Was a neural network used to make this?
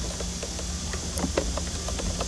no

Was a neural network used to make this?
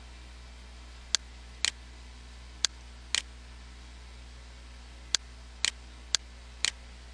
no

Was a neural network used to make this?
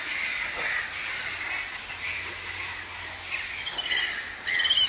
no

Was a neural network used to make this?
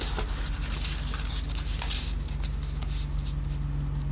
no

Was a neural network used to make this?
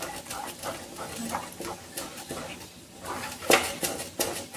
no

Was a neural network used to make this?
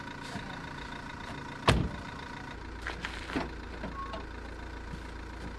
no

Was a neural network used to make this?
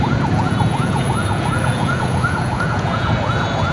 yes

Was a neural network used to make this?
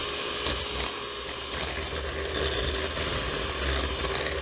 no